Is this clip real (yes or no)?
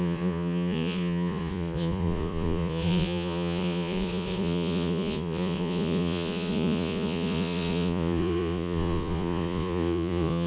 no